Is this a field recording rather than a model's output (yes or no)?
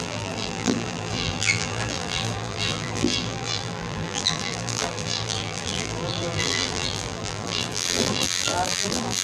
no